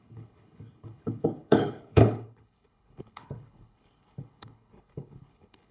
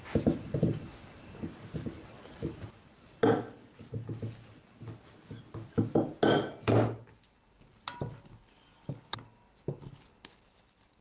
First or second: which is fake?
first